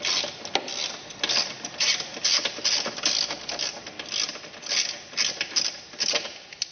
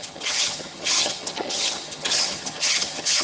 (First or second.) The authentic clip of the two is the first